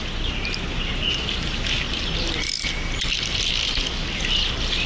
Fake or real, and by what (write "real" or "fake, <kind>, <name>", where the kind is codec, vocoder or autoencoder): real